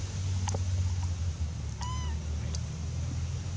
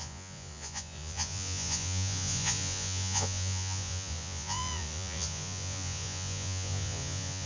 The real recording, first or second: first